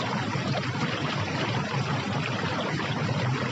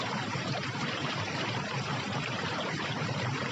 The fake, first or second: second